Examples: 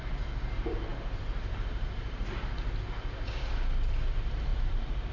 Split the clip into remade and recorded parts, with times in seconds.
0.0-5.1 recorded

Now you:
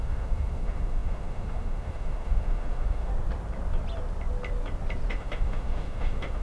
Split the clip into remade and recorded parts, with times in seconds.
0.0-3.1 remade; 3.1-5.1 recorded; 5.1-6.4 remade

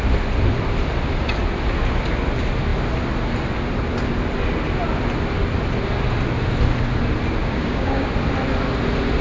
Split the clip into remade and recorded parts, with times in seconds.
0.0-7.4 recorded; 7.4-8.1 remade; 8.1-9.2 recorded

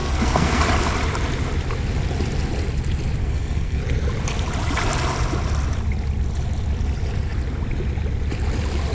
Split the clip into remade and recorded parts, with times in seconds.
0.0-0.6 remade; 0.6-3.2 recorded; 3.2-3.8 remade; 3.8-8.9 recorded

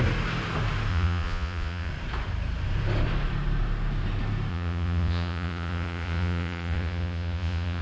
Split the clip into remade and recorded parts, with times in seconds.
0.0-0.9 recorded; 0.9-1.9 remade; 1.9-4.5 recorded; 4.5-7.8 remade

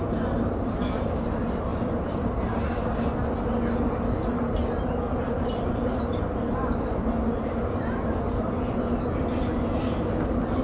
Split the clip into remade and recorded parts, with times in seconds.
0.0-1.7 recorded; 1.7-3.0 remade; 3.0-5.1 recorded; 5.1-7.0 remade; 7.0-10.6 recorded

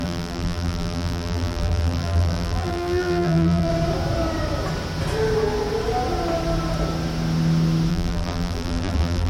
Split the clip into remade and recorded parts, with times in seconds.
0.0-3.7 remade; 3.7-7.9 recorded; 7.9-9.3 remade

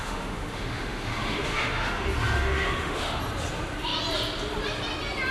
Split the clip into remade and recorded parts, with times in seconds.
0.0-3.2 remade; 3.2-5.3 recorded